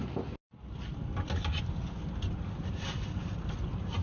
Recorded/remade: recorded